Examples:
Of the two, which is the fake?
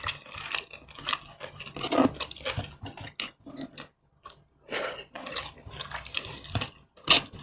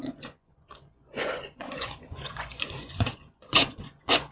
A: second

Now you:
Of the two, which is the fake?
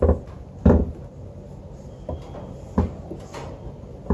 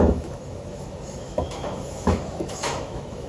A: second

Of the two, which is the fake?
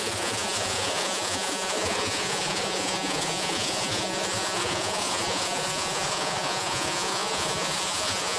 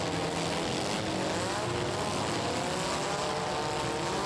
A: first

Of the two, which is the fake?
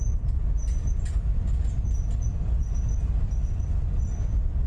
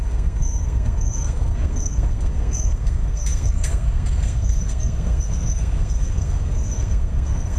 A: second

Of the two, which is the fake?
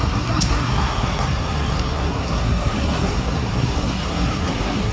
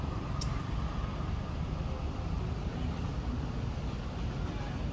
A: first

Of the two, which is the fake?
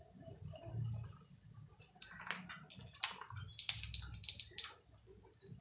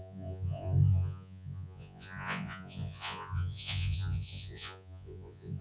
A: second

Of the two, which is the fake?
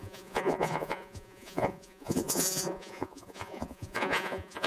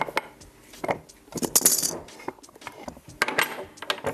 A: first